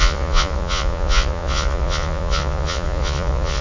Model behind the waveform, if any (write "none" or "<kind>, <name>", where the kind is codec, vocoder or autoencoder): vocoder, Vocos